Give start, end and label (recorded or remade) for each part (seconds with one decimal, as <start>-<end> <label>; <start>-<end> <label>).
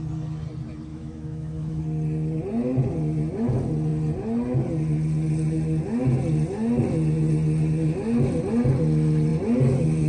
0.0-0.9 recorded; 0.9-1.8 remade; 1.8-10.1 recorded